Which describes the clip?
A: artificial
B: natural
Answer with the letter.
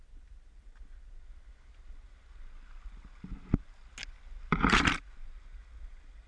B